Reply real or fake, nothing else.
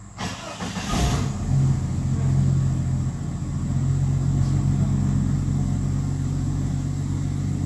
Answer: real